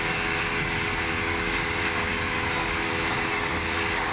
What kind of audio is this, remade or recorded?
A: remade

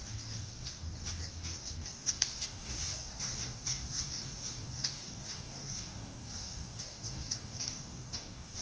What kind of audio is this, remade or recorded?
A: remade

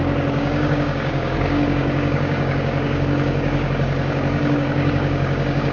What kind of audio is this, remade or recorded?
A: remade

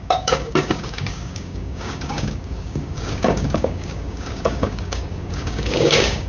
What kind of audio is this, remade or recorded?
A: remade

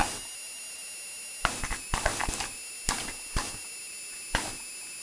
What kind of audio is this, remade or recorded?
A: recorded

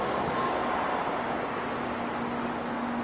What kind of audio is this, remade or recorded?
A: recorded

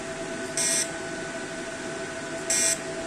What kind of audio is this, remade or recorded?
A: recorded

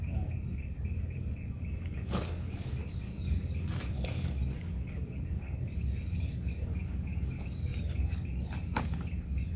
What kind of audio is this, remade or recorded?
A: remade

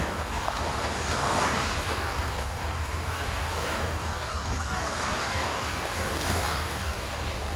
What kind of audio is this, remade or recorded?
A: remade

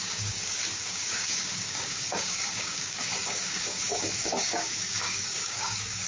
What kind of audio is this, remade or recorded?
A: remade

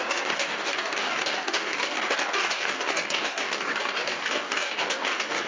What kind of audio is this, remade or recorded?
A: remade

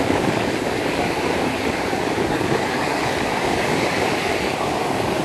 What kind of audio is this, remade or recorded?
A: remade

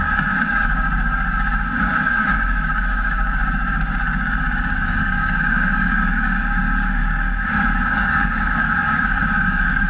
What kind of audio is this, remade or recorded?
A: remade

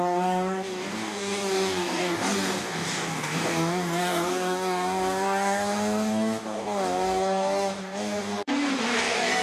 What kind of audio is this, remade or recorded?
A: remade